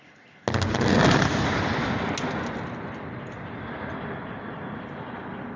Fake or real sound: real